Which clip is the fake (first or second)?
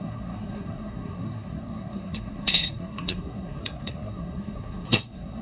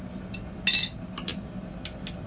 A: first